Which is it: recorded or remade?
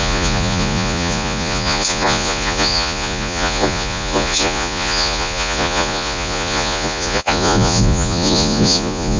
remade